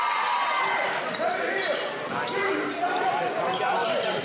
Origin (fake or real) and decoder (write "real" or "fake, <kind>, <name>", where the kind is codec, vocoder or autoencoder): fake, vocoder, BigVGAN v2